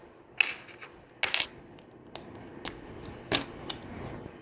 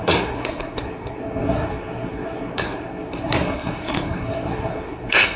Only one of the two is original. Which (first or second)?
first